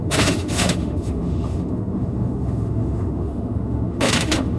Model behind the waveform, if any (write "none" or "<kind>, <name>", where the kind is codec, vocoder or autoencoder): autoencoder, DAC-VAE